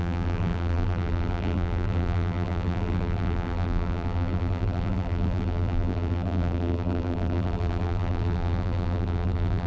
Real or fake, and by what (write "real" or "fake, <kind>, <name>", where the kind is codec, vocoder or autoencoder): fake, vocoder, BigVGAN v2